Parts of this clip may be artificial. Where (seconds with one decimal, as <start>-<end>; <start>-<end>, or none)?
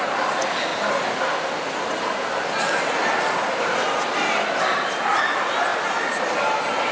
none